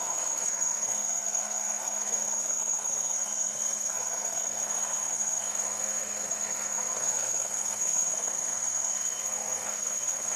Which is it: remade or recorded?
remade